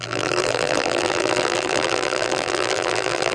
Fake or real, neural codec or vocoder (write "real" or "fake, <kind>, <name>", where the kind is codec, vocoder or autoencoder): fake, vocoder, BigVGAN v2